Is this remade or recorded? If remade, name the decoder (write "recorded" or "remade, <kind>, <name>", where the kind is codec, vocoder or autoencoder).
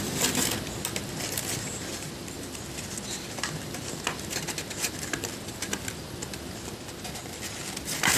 recorded